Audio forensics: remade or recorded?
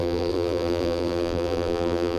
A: remade